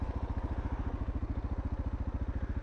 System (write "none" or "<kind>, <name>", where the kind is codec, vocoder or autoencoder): none